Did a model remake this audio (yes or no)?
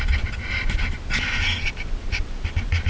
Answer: no